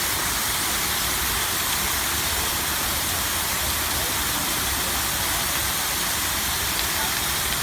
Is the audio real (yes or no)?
no